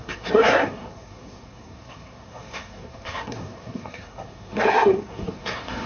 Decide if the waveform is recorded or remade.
remade